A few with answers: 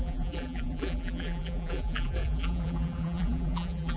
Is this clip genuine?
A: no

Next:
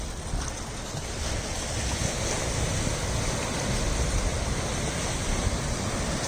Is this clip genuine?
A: yes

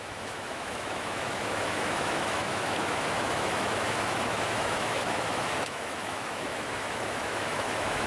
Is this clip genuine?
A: no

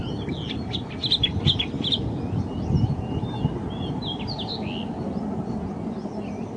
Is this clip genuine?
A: yes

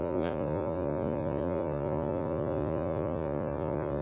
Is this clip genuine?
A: no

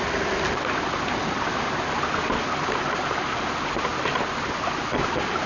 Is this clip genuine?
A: yes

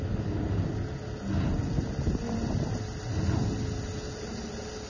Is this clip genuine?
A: yes